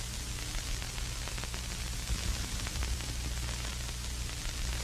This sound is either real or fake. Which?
real